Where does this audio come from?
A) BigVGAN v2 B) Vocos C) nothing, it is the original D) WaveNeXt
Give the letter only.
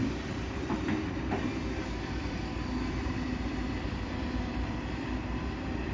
A